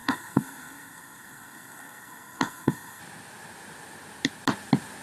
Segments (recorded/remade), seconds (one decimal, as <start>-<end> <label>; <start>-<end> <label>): 0.0-3.0 remade; 3.0-5.0 recorded